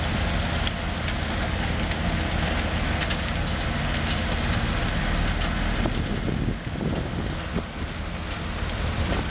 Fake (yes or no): no